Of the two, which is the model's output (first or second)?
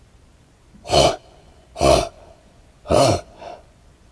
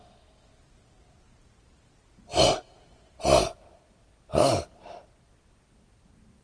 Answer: first